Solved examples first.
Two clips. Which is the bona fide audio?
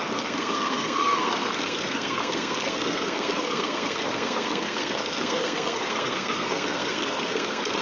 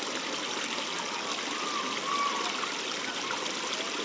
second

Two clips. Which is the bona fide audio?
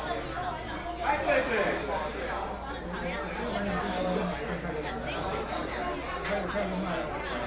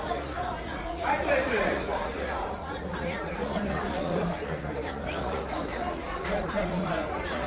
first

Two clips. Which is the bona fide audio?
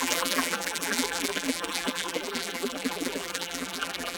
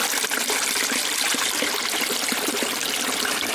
second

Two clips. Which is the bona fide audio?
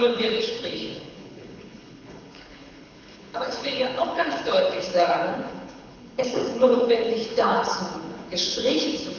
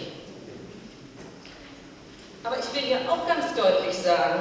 second